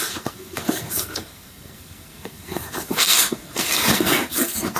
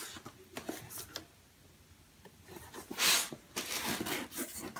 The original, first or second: second